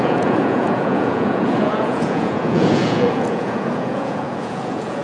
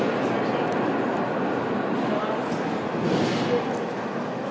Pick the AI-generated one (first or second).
first